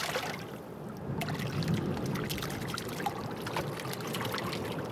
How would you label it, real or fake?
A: real